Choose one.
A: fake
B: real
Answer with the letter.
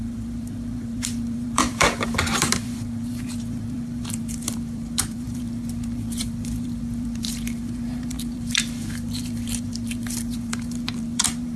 A